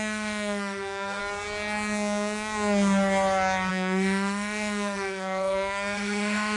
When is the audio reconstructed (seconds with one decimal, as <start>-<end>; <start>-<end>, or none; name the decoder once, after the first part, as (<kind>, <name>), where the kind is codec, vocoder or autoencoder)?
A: 0.0-1.2 (autoencoder, DAC-VAE); 3.7-6.6

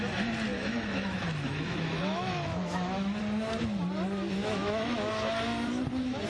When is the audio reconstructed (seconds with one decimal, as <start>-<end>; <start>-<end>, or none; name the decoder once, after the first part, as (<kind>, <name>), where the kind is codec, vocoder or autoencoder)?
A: 0.5-3.2 (autoencoder, DAC-VAE); 4.4-5.1

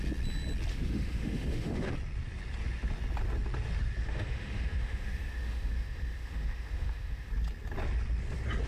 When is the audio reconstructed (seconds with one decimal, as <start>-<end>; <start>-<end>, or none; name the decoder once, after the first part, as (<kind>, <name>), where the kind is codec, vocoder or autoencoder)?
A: 0.7-1.9 (autoencoder, DAC-VAE); 4.0-7.3

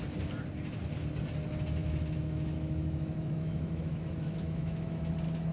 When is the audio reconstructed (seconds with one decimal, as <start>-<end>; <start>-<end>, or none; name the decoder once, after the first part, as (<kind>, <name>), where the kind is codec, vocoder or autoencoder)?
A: 1.8-5.1 (autoencoder, DAC-VAE)

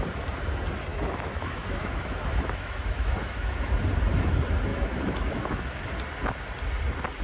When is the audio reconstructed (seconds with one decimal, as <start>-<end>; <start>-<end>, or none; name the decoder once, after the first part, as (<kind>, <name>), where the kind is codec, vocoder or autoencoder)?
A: 0.9-3.7 (autoencoder, DAC-VAE); 4.7-5.8

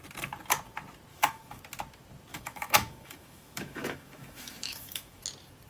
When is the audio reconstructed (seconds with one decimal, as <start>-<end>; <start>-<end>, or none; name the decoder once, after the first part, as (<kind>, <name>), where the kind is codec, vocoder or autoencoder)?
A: 1.1-1.6 (autoencoder, DAC-VAE); 2.3-5.2

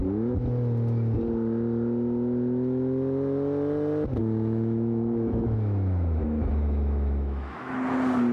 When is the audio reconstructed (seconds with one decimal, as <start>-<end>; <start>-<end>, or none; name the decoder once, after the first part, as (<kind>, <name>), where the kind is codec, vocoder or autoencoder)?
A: 4.2-7.7 (autoencoder, DAC-VAE)